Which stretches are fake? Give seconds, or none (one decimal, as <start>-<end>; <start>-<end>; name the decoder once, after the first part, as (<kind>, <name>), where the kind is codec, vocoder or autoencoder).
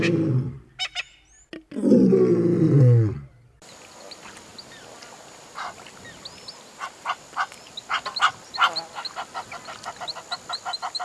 none